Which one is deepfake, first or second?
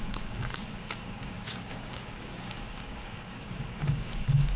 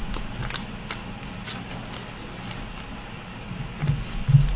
first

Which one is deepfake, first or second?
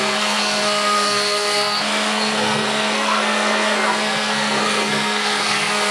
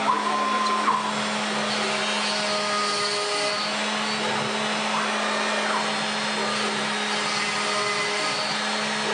first